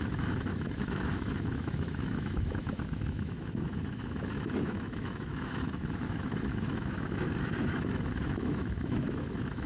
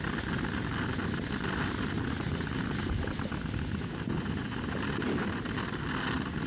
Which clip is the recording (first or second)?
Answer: second